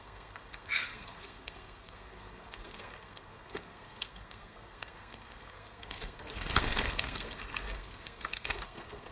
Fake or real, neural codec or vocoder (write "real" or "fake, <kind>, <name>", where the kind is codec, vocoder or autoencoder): fake, codec, SNAC